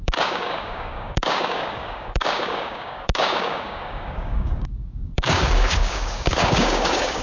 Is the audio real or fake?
fake